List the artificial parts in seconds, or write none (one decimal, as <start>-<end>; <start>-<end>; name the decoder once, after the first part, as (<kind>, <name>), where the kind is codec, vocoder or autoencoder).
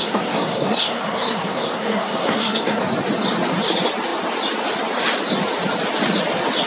0.0-2.8 (codec, SNAC)